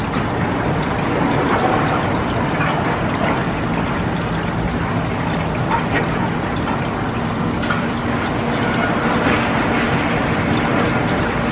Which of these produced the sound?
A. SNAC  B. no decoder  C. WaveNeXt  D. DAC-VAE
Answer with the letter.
B